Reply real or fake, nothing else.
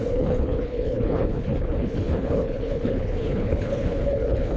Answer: fake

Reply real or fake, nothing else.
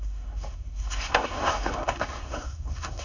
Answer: fake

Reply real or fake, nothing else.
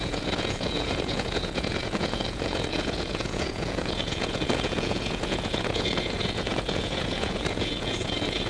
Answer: fake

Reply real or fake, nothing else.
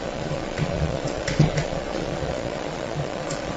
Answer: fake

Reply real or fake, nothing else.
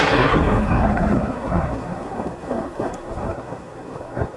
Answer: fake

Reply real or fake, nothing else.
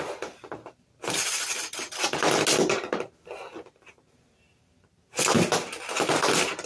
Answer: real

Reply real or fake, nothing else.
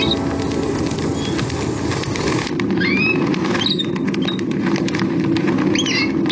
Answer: real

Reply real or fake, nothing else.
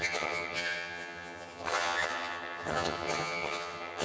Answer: fake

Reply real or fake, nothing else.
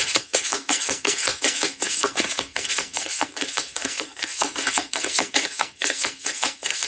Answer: fake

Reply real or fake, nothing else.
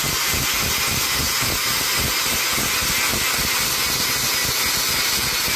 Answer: real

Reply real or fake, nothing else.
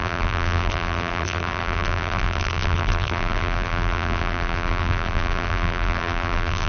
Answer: fake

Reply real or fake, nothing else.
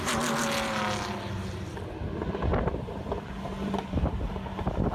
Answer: real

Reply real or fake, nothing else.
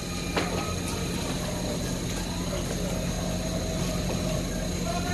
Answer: real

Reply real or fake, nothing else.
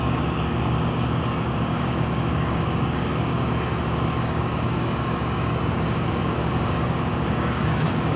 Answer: fake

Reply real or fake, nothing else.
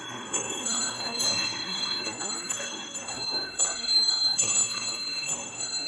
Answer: fake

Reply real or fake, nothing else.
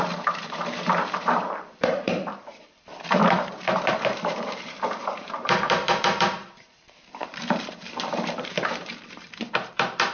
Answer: fake